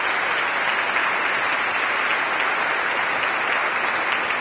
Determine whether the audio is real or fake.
real